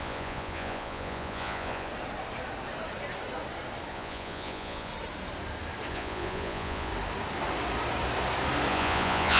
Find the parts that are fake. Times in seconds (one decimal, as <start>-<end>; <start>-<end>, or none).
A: 0.0-1.9; 3.9-4.9; 5.9-6.9; 8.7-9.4